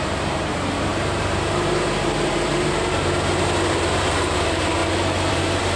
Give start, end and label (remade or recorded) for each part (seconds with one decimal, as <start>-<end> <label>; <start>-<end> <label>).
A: 0.0-4.8 remade; 4.8-5.3 recorded; 5.3-5.8 remade